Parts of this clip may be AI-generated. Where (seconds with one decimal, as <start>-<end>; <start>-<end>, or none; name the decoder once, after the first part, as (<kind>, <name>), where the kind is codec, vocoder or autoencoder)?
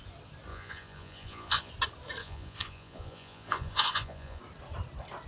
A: 0.5-1.7 (vocoder, Vocos); 2.2-4.4